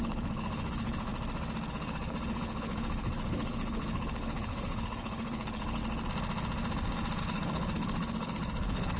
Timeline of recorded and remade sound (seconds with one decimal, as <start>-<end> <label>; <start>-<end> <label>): 0.0-1.1 remade; 1.1-1.7 recorded; 1.7-5.8 remade; 5.8-7.2 recorded; 7.2-9.0 remade